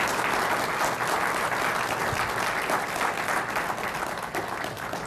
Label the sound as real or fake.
real